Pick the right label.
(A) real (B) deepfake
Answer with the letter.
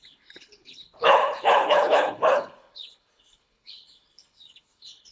B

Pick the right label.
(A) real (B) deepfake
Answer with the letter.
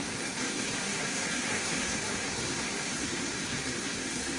B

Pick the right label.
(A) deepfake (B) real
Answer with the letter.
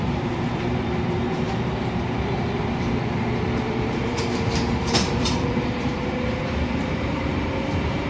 A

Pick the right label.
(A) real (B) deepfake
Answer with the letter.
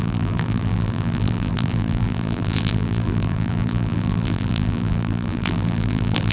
B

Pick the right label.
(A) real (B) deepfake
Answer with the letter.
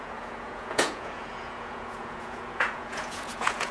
B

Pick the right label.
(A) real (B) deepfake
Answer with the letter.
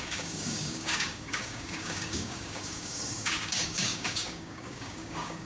B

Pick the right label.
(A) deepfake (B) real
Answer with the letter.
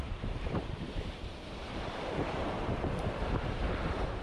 A